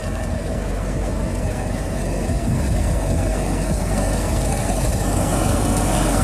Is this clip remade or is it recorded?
remade